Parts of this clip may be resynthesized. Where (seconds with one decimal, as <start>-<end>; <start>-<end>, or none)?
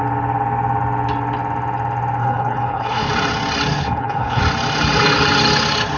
2.2-3.1; 3.8-4.4